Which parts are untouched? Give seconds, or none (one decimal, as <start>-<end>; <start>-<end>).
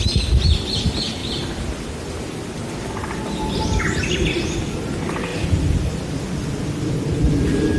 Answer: 0.0-7.8